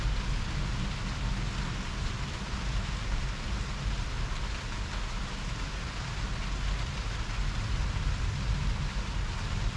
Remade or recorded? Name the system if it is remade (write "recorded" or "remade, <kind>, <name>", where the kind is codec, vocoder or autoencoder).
recorded